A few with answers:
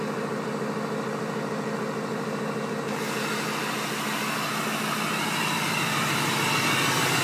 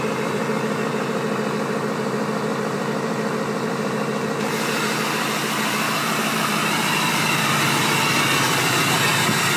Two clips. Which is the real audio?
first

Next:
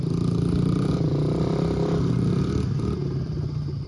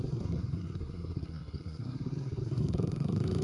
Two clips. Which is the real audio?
first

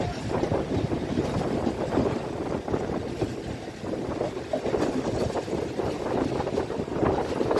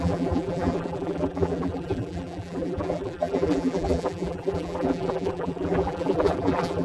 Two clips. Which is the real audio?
first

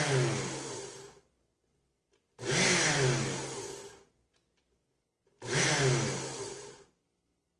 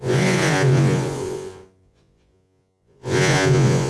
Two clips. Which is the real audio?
first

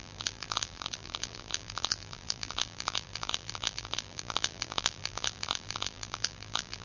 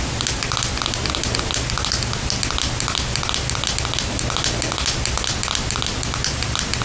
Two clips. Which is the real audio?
second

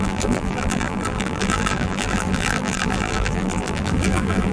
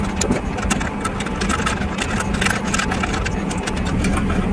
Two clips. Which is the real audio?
second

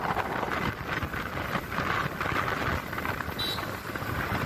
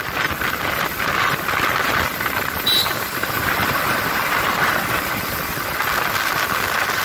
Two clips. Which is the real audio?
first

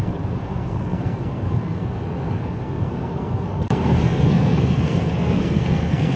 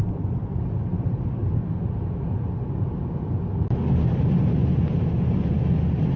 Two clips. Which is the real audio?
second